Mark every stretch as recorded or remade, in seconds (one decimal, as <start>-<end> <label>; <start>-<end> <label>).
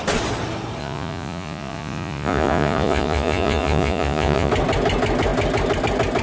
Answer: 0.0-0.8 recorded; 0.8-4.5 remade; 4.5-6.2 recorded